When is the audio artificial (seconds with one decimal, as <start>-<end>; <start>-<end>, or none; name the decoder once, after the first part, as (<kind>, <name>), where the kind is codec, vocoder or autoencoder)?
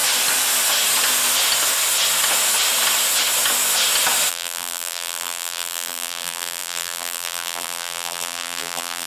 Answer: 4.3-9.1 (vocoder, BigVGAN v2)